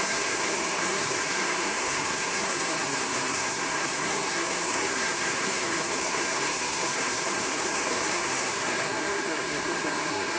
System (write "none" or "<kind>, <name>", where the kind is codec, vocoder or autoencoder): codec, SNAC